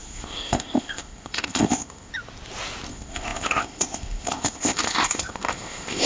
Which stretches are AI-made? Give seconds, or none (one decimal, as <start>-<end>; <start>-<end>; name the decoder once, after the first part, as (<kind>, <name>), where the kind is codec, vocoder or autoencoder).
0.0-2.1 (codec, ZipCodec); 2.9-6.1